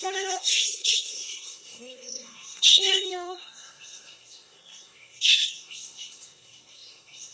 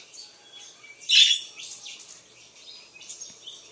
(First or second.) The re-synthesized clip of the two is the first